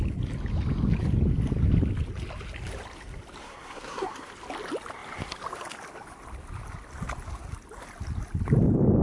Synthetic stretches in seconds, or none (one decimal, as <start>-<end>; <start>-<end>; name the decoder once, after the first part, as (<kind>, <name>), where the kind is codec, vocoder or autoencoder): 3.4-4.3 (codec, SNAC)